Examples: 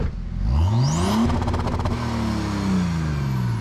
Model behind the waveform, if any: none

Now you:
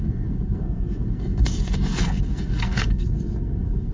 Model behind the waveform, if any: codec, SNAC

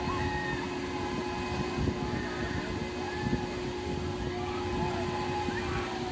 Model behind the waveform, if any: none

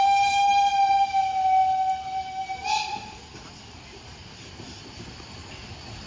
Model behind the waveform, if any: none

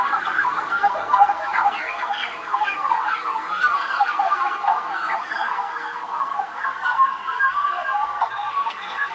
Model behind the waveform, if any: codec, SNAC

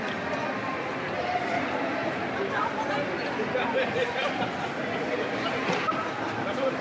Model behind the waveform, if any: none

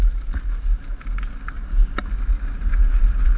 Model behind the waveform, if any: none